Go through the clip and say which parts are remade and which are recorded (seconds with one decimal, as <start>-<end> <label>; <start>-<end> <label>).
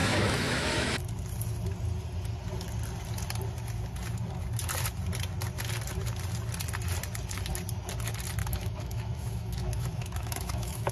0.0-1.0 remade; 1.0-8.4 recorded; 8.4-10.9 remade